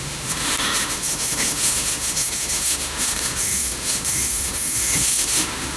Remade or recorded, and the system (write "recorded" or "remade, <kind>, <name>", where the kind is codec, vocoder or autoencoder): remade, autoencoder, DAC-VAE